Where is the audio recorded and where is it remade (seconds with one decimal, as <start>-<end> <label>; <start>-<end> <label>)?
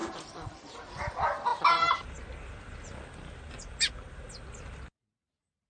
0.0-0.9 remade; 0.9-5.7 recorded